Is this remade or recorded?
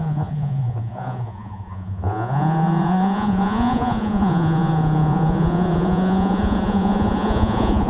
remade